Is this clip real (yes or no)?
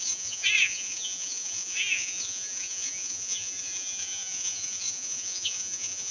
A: no